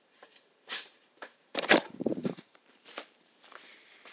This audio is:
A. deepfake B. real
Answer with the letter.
A